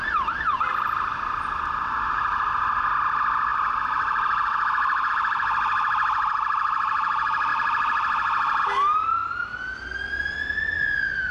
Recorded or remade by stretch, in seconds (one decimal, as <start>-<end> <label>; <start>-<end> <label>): 0.0-11.3 recorded